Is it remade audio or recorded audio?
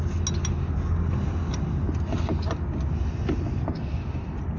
recorded